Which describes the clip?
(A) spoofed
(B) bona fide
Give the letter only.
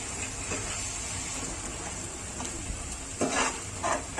B